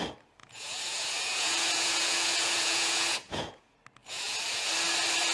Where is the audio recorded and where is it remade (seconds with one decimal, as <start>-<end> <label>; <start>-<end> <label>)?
0.0-0.4 recorded; 0.4-3.6 remade; 3.6-4.0 recorded; 4.0-4.7 remade; 4.7-5.3 recorded